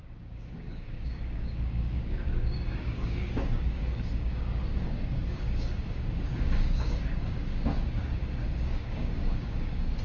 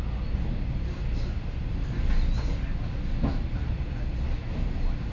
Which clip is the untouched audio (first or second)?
second